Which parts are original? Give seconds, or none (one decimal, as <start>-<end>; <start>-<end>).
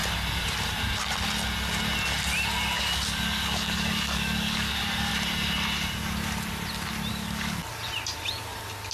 0.0-2.8; 5.1-7.1; 7.6-8.9